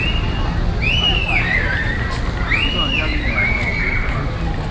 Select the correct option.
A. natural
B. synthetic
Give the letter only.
A